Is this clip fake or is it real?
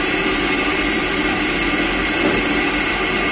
real